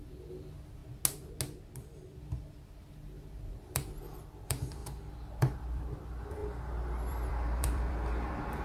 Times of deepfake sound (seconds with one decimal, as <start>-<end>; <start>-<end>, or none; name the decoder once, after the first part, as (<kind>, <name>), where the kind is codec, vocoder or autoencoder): 0.0-0.8 (vocoder, BigVGAN v2); 2.9-4.8; 5.4-8.6